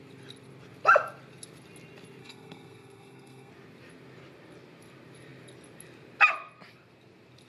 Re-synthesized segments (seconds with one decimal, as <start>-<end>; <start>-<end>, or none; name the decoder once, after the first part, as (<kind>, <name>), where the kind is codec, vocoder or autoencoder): 2.2-3.5 (codec, SNAC)